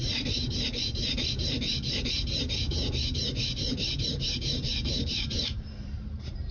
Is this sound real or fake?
fake